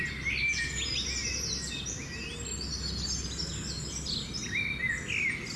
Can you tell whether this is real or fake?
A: real